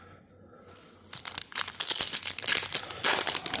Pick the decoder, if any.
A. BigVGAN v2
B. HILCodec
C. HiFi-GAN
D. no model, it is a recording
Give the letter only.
D